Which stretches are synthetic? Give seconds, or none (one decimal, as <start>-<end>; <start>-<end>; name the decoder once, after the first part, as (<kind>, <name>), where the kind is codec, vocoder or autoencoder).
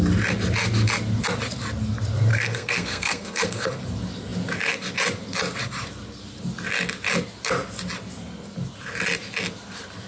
2.3-3.7 (codec, SNAC)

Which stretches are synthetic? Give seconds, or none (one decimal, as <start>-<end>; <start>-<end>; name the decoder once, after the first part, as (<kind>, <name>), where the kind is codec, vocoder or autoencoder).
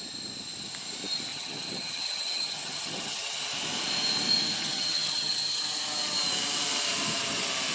1.3-3.4 (vocoder, HiFi-GAN); 4.6-5.6